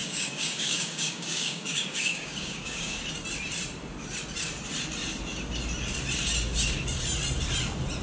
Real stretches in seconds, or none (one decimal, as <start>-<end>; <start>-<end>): 3.0-8.0